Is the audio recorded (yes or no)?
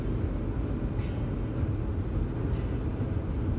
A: yes